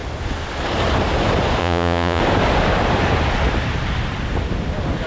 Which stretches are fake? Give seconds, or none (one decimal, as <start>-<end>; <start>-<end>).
1.6-2.2